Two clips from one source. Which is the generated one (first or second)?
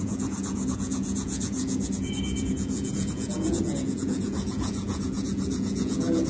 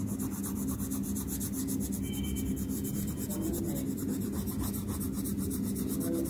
first